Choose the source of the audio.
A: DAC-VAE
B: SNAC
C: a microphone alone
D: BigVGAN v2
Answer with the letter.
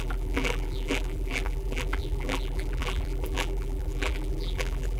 D